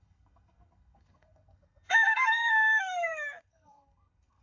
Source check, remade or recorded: remade